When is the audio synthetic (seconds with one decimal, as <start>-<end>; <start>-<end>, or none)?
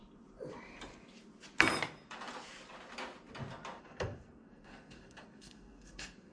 3.8-6.3